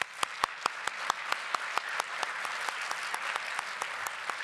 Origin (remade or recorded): recorded